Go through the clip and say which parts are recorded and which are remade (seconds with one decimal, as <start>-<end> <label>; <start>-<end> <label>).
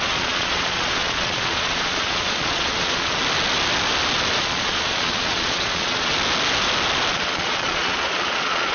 0.0-3.2 remade; 3.2-4.4 recorded; 4.4-6.1 remade; 6.1-7.1 recorded; 7.1-8.7 remade